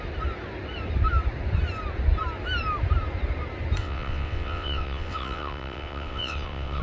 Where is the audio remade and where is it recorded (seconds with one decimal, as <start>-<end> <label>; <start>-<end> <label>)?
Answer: 0.0-3.8 recorded; 3.8-6.8 remade